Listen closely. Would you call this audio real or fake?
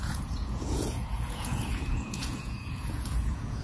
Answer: fake